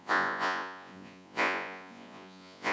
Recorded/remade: remade